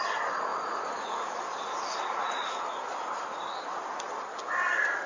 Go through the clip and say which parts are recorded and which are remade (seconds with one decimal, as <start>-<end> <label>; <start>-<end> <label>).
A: 0.0-0.5 recorded; 0.5-1.3 remade; 1.3-5.1 recorded